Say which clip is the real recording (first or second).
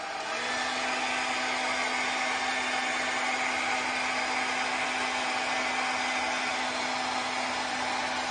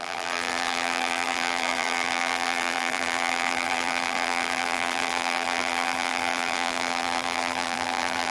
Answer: first